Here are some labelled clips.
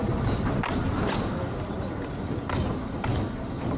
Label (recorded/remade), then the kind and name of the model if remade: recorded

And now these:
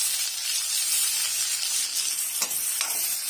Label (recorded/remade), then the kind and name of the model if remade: recorded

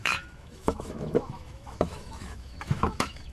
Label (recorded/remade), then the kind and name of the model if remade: remade, autoencoder, DAC-VAE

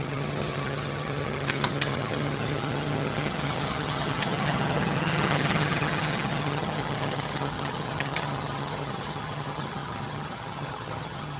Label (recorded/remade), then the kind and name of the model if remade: remade, vocoder, HiFi-GAN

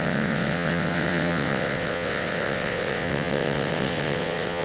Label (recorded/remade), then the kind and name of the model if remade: remade, vocoder, WaveNeXt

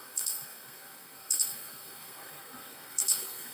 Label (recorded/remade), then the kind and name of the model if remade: remade, codec, SNAC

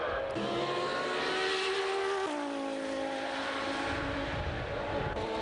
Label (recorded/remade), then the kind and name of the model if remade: recorded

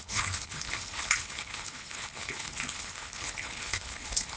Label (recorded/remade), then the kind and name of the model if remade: remade, codec, HILCodec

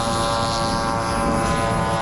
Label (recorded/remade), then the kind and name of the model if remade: recorded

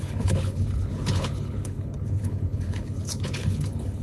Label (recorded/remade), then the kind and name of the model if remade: remade, codec, HILCodec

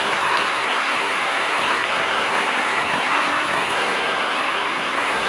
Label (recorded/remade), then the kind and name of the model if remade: remade, codec, SNAC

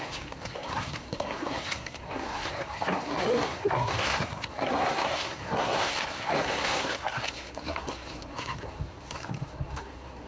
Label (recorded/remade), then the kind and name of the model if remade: remade, codec, SNAC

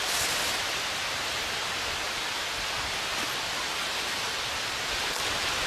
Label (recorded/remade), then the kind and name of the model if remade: recorded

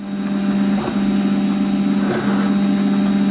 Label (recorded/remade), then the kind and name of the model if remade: recorded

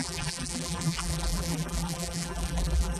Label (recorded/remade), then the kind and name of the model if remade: remade, vocoder, BigVGAN v2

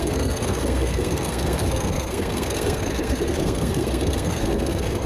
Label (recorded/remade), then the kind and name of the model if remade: remade, codec, SNAC